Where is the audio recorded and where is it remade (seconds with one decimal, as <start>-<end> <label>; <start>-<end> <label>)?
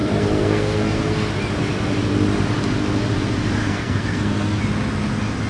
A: 0.0-1.3 remade; 1.3-3.6 recorded; 3.6-4.6 remade; 4.6-5.5 recorded